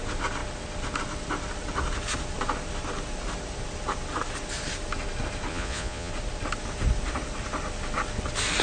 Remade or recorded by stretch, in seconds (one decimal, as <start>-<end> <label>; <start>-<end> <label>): 0.0-5.5 recorded; 5.5-6.1 remade; 6.1-8.6 recorded